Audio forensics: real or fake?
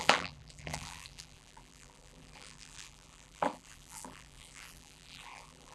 fake